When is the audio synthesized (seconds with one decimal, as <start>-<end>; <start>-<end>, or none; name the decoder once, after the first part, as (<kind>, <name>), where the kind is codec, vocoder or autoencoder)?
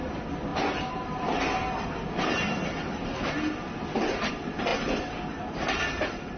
none